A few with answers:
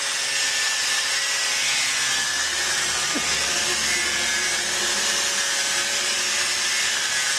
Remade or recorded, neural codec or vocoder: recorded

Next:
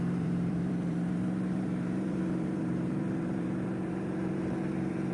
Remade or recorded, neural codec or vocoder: remade, vocoder, BigVGAN v2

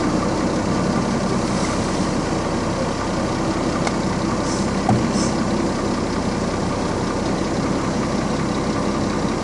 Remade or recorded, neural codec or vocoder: recorded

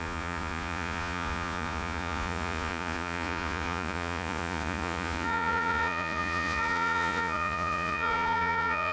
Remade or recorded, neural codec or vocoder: remade, vocoder, Vocos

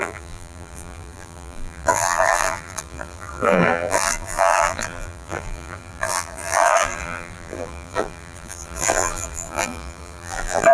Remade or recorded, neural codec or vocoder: remade, vocoder, BigVGAN v2